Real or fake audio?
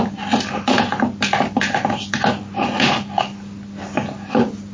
real